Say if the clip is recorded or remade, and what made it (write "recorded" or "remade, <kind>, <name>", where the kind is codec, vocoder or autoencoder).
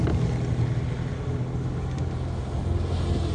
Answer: recorded